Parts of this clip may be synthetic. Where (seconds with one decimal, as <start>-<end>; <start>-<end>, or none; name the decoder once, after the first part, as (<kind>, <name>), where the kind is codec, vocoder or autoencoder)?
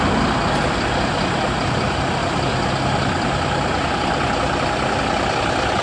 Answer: none